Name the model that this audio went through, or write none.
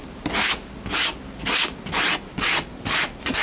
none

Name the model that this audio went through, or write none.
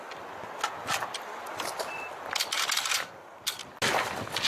none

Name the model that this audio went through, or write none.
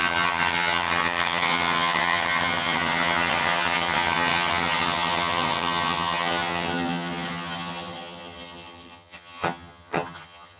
vocoder, HiFi-GAN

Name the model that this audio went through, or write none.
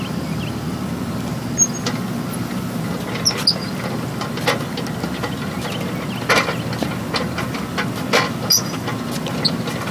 none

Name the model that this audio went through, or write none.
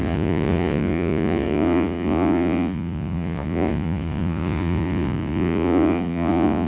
vocoder, Vocos